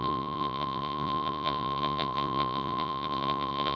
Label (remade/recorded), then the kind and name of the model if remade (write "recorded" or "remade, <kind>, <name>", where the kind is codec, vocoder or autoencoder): remade, vocoder, Vocos